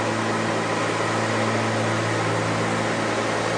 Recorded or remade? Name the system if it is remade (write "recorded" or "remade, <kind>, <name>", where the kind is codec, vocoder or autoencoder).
recorded